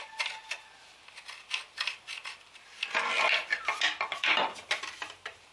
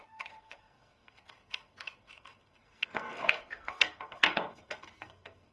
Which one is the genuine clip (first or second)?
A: first